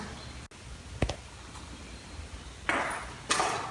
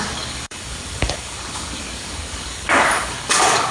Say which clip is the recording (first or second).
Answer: first